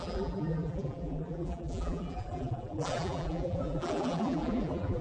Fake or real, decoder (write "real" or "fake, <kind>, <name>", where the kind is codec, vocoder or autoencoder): fake, vocoder, BigVGAN v2